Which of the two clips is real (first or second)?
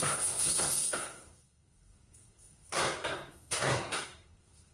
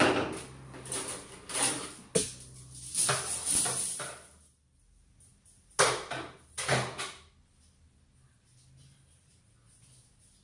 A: second